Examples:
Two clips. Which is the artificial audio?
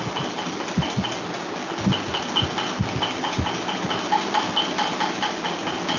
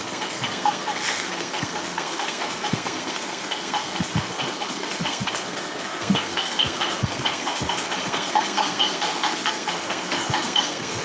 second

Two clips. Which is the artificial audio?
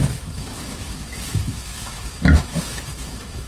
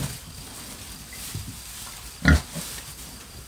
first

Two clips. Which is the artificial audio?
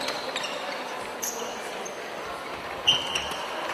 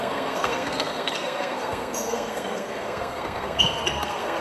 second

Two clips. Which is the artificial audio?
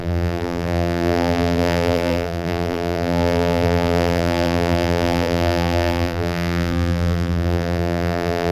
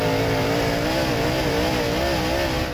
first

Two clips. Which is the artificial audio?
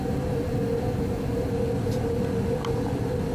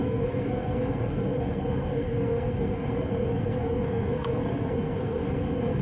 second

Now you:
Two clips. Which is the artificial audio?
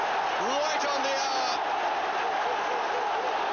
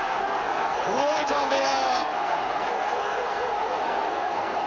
second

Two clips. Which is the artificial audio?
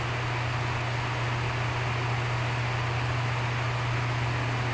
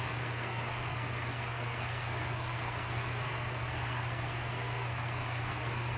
second